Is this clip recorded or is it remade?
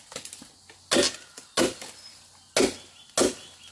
recorded